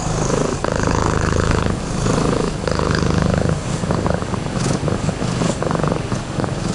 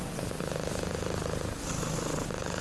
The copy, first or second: first